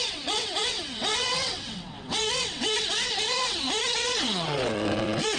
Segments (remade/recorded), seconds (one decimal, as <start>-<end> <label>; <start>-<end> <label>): 0.0-5.4 remade

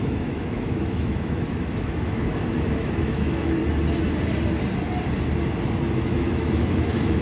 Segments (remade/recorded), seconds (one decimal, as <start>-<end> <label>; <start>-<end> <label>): 0.0-3.6 remade; 3.6-6.0 recorded; 6.0-7.2 remade